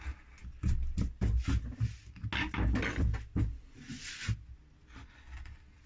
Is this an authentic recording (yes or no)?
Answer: yes